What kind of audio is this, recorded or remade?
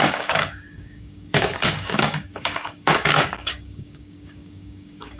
remade